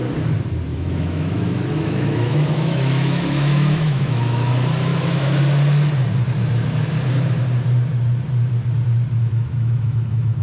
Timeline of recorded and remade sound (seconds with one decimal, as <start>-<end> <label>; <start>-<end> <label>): 0.0-0.7 recorded; 0.7-4.5 remade; 4.5-4.9 recorded; 4.9-5.4 remade; 5.4-9.2 recorded; 9.2-10.4 remade